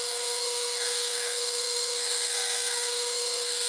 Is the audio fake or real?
fake